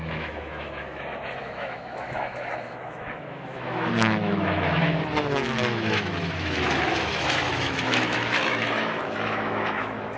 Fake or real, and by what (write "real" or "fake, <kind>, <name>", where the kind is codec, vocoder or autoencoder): fake, autoencoder, DAC-VAE